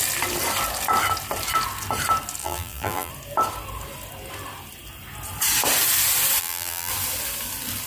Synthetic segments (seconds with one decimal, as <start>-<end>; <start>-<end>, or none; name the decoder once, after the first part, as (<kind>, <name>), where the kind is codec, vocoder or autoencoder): 2.4-3.1 (vocoder, BigVGAN v2); 6.4-6.9